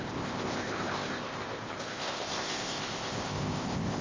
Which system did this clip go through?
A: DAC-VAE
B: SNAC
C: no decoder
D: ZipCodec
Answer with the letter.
D